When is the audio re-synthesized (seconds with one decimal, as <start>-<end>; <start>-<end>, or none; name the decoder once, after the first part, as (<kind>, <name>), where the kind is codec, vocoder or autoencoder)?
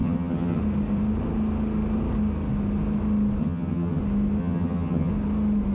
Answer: 0.0-0.6 (vocoder, HiFi-GAN); 3.4-4.0; 4.4-5.1